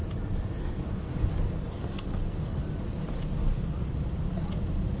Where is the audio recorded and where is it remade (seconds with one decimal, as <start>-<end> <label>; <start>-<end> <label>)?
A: 0.0-0.6 recorded; 0.6-1.1 remade; 1.1-1.8 recorded; 1.8-2.6 remade; 2.6-5.0 recorded